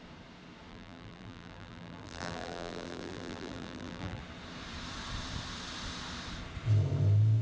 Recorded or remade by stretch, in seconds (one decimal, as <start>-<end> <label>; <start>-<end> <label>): 0.0-0.7 recorded; 0.7-4.2 remade; 4.2-7.4 recorded